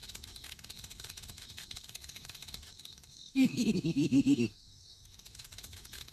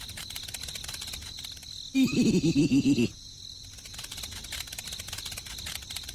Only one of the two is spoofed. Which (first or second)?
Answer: first